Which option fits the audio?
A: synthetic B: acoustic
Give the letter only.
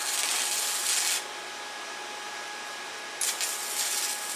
B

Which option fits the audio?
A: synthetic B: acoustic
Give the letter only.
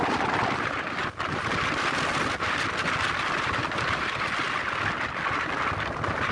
B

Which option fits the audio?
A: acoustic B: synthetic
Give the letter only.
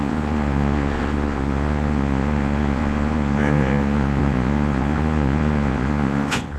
B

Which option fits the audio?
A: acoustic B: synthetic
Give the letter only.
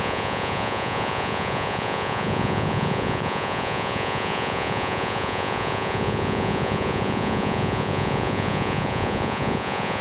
B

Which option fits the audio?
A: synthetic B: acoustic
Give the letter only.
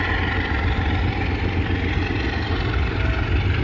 B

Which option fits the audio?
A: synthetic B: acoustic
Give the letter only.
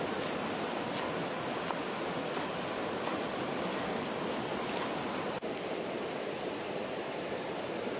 B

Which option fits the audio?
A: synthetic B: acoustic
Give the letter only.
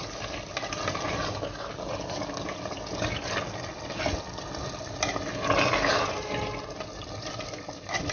B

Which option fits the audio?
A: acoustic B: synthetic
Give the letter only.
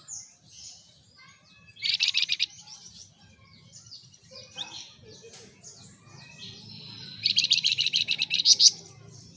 A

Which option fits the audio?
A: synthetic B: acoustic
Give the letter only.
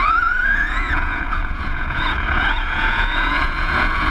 A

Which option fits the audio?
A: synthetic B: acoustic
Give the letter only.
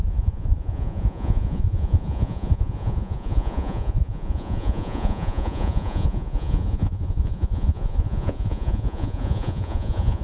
A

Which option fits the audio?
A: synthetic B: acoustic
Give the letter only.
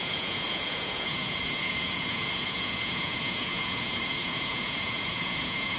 A